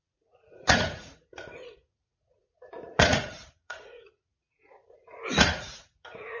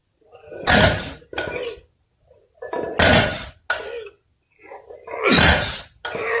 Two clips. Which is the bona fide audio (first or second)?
second